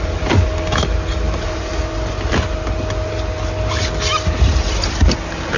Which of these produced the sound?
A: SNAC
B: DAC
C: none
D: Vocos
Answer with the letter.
C